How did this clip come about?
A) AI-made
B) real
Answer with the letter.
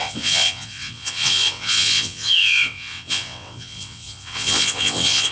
A